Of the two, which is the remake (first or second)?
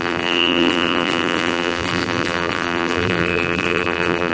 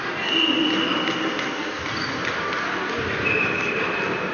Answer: first